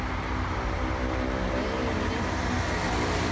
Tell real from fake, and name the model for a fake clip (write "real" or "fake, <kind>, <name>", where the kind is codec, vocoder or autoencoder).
real